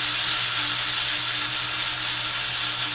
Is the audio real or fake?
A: real